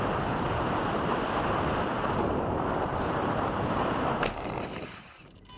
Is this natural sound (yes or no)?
no